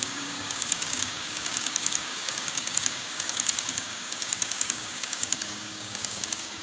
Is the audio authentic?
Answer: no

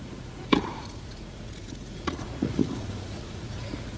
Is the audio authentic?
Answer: no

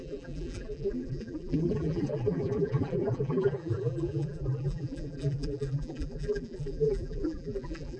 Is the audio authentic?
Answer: no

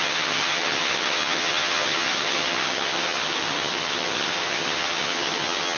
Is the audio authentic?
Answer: no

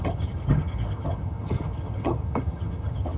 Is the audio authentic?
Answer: no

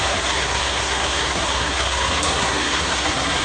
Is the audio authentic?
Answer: no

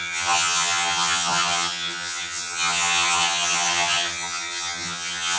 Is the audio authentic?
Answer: no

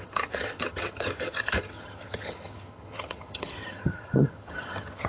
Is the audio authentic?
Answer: no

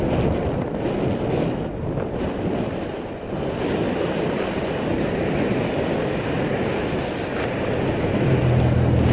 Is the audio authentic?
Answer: yes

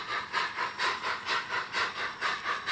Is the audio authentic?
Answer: no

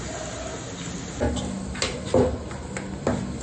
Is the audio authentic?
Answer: yes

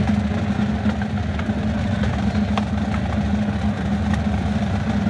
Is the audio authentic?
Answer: yes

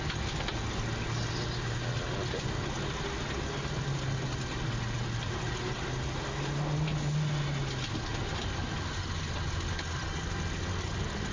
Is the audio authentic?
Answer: yes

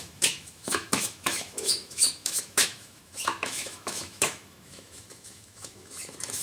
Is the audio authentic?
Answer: no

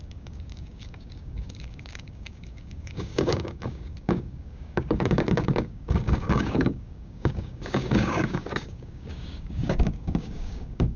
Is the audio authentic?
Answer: no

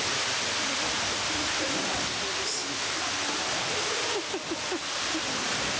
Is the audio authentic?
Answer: yes